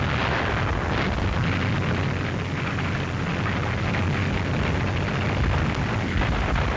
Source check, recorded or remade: recorded